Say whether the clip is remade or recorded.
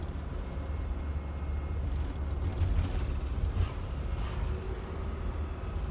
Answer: recorded